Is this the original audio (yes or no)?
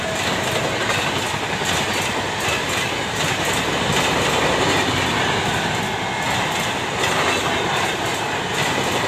yes